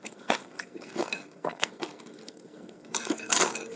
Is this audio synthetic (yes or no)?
yes